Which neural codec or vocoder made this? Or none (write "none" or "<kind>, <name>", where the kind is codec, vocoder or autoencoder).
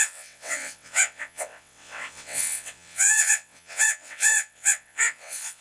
vocoder, WaveNeXt